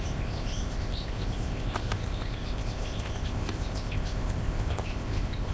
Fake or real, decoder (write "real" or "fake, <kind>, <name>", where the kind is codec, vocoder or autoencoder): fake, codec, ZipCodec